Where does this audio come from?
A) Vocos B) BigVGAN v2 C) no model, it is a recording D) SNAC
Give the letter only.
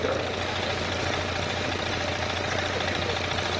C